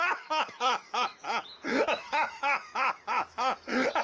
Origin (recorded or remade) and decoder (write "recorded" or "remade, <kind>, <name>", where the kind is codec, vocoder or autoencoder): remade, autoencoder, DAC-VAE